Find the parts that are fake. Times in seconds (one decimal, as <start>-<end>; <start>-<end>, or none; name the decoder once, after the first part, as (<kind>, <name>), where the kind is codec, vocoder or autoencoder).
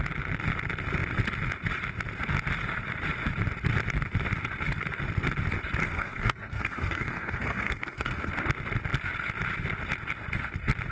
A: 5.8-8.3 (codec, SNAC)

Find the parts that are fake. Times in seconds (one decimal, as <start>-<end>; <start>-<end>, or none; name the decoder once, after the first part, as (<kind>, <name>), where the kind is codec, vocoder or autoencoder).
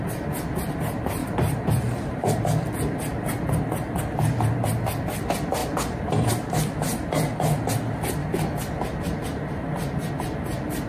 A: 1.2-2.4 (vocoder, BigVGAN v2)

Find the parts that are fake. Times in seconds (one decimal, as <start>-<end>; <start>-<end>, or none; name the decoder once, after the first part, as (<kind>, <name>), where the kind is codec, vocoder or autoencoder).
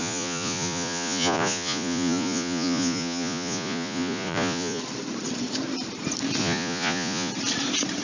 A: 0.0-4.8 (vocoder, Vocos); 6.4-7.3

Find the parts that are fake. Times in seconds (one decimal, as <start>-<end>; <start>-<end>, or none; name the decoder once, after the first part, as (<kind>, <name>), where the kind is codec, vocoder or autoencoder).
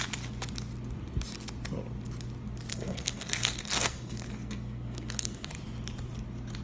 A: 2.7-5.5 (codec, SNAC)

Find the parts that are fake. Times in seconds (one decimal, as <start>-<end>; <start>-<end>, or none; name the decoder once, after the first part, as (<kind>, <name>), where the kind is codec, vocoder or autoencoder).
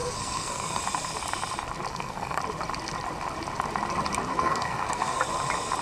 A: 0.0-0.8 (codec, SNAC); 1.9-2.4; 4.3-5.2